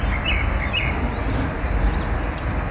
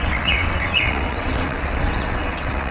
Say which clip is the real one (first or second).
first